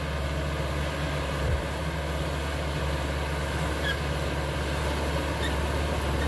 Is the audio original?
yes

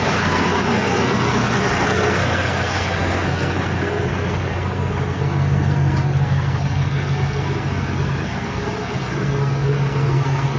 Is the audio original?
no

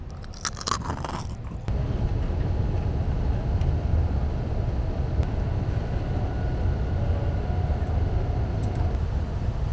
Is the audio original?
yes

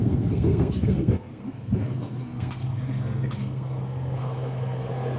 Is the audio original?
no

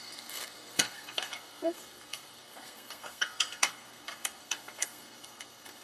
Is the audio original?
no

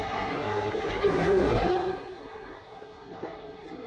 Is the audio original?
no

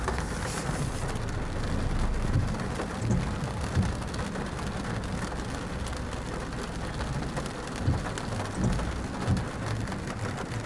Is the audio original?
yes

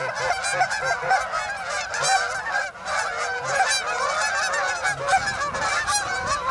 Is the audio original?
yes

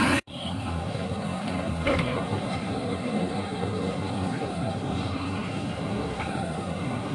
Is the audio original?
no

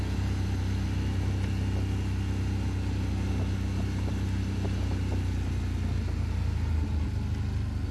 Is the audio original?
yes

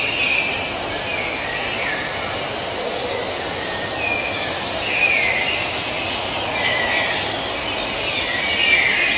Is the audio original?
yes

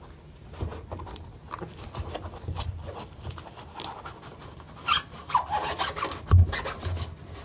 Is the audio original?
yes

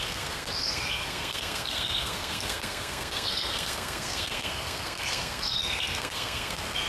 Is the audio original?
no